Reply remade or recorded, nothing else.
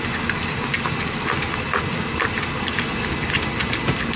recorded